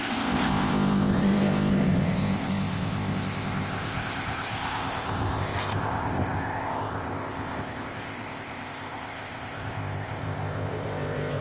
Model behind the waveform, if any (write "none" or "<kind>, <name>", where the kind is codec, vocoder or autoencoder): codec, ZipCodec